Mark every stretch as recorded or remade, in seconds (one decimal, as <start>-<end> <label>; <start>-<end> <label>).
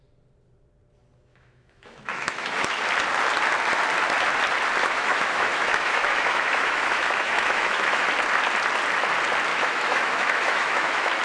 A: 0.0-1.3 recorded; 1.3-2.8 remade; 2.8-4.8 recorded; 4.8-8.1 remade; 8.1-9.5 recorded; 9.5-11.2 remade